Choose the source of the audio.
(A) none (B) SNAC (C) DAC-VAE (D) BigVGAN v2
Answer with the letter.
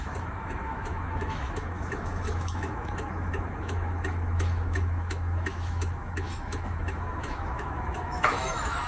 C